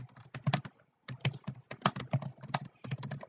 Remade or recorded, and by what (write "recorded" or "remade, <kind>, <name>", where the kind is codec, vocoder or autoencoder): recorded